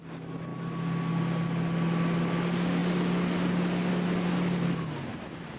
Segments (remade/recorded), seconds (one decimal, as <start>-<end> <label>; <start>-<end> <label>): 0.0-5.6 recorded